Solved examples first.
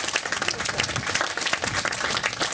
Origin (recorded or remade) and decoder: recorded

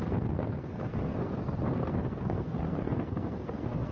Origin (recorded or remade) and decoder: remade, codec, SNAC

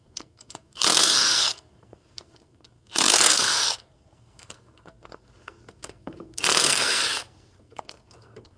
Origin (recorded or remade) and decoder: remade, codec, SNAC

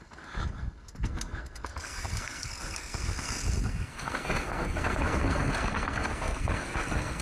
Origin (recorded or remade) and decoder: remade, codec, SNAC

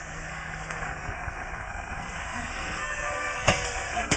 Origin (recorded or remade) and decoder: remade, codec, SNAC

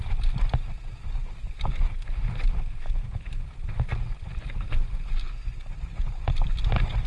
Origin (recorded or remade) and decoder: recorded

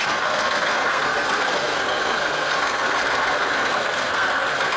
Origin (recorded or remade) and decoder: remade, codec, SNAC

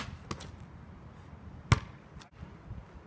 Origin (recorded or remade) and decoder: recorded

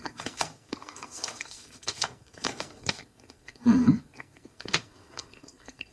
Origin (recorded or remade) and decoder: remade, codec, SNAC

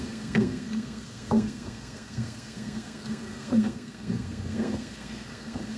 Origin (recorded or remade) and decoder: remade, codec, SNAC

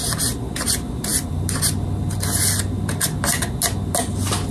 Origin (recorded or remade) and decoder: recorded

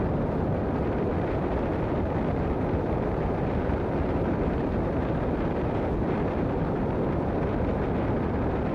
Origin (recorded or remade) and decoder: recorded